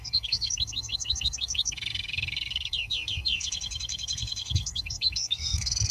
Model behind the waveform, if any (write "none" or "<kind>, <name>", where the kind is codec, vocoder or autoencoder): codec, SNAC